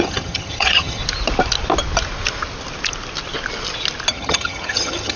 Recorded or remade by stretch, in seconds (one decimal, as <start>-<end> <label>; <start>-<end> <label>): 0.0-1.0 remade; 1.0-4.1 recorded; 4.1-5.2 remade